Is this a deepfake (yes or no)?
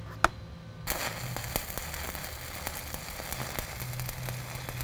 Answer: no